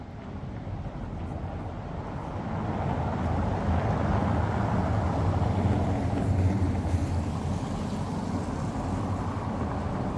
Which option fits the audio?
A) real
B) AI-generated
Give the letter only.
A